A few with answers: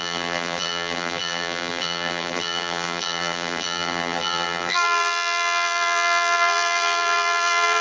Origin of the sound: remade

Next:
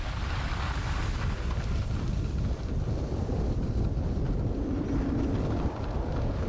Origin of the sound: recorded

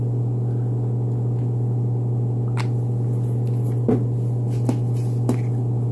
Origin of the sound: recorded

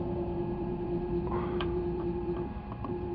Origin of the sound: remade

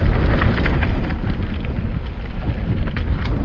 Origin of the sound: recorded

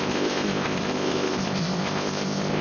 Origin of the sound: remade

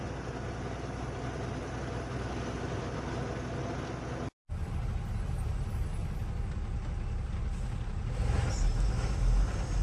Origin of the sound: recorded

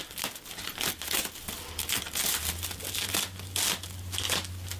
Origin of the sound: recorded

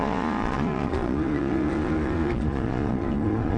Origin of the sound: remade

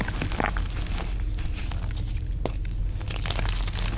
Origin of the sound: recorded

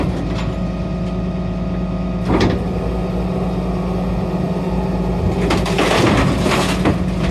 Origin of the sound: recorded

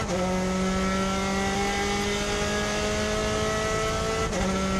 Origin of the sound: recorded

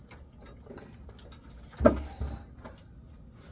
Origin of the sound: recorded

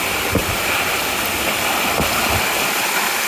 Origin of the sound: recorded